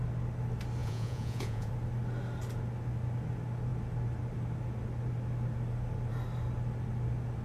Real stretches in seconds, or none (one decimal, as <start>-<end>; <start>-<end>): 0.0-0.8; 1.7-7.4